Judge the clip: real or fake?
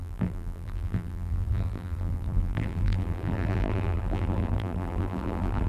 fake